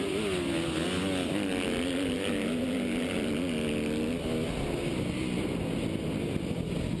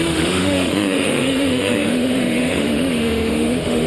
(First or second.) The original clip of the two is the first